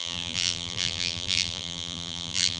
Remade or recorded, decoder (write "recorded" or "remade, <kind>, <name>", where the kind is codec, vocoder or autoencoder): remade, vocoder, BigVGAN v2